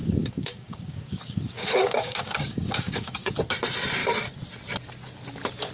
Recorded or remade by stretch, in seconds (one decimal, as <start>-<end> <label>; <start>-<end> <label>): 0.0-3.3 remade; 3.3-5.7 recorded